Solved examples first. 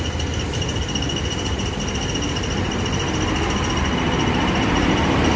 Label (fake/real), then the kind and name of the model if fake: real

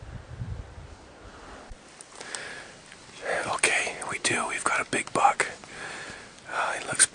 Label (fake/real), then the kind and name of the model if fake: real